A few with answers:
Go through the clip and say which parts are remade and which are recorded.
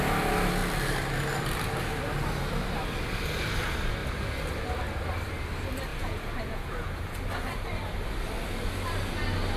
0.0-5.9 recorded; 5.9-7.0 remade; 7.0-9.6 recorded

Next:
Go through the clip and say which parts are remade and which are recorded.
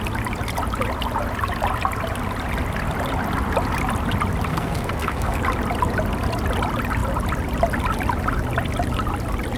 0.0-4.5 recorded; 4.5-5.4 remade; 5.4-9.6 recorded